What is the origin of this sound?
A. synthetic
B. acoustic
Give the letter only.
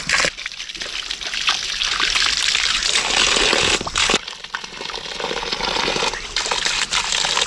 B